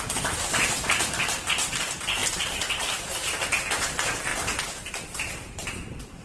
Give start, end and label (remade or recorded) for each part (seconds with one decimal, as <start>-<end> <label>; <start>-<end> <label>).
0.0-6.2 recorded